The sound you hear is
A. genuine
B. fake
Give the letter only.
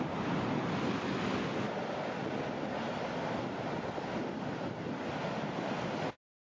A